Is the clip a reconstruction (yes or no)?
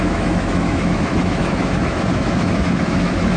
yes